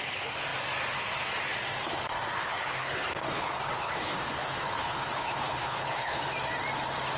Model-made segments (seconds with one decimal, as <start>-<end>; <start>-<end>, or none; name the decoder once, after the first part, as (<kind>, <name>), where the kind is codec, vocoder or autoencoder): 2.4-6.2 (codec, HILCodec)